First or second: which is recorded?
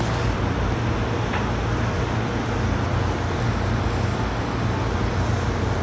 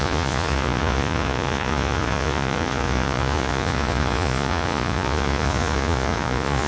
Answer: first